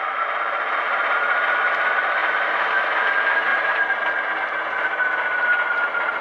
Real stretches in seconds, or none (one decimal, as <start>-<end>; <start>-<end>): 0.0-6.2